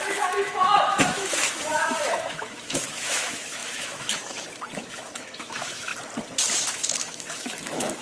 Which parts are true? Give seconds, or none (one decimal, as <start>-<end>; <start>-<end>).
5.9-6.5